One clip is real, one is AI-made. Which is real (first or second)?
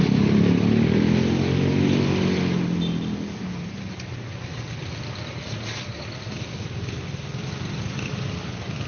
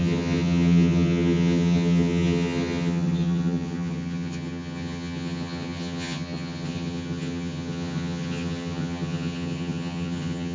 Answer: first